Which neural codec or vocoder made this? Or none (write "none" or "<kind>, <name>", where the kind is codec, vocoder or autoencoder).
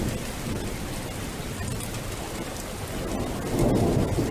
none